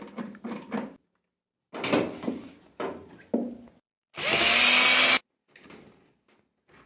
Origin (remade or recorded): recorded